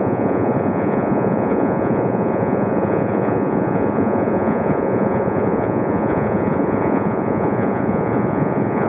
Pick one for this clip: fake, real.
fake